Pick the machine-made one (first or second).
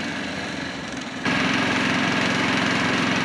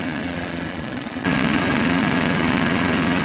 second